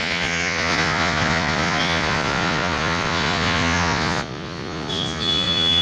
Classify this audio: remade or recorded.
remade